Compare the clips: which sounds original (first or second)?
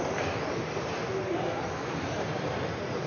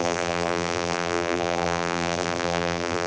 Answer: first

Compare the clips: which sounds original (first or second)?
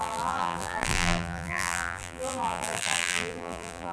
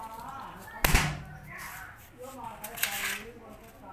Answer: second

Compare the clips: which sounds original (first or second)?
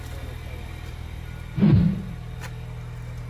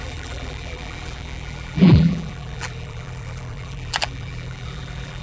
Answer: first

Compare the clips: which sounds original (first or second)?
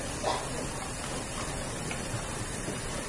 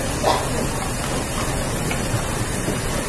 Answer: second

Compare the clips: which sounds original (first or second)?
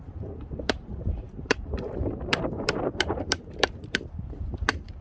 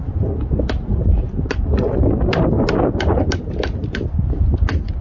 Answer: second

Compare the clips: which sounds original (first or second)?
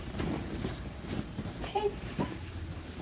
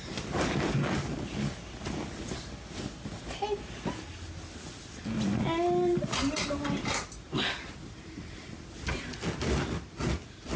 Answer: second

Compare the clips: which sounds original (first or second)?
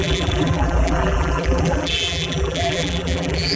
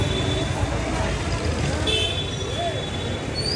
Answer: second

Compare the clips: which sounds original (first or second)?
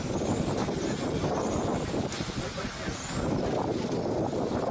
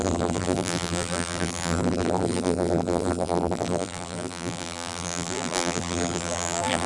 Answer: first